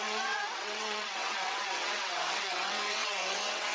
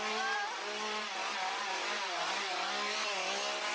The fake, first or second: first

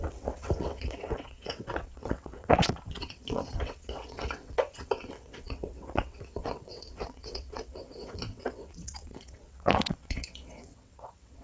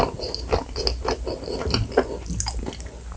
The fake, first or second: first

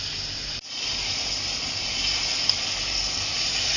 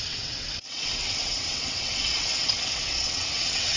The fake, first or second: second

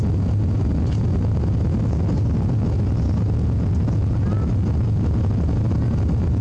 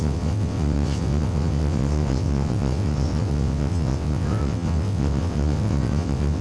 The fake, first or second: second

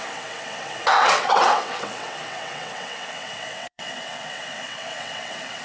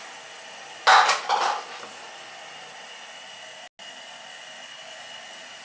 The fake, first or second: first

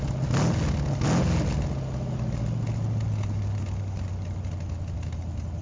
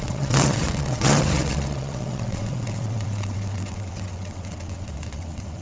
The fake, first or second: second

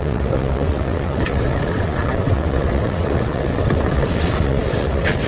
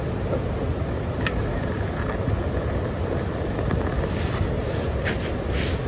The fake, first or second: first